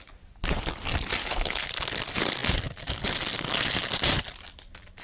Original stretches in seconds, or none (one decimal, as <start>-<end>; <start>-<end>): 0.0-1.2; 1.7-5.0